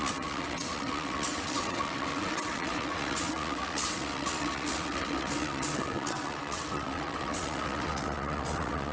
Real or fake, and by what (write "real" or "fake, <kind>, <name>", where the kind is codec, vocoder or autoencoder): fake, vocoder, WaveNeXt